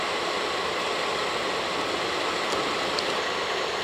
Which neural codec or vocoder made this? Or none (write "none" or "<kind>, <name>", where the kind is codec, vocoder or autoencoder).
none